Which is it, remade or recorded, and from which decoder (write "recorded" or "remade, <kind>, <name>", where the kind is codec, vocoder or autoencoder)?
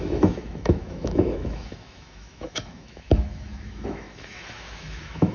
remade, autoencoder, DAC-VAE